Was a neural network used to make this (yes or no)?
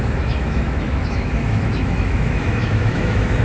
yes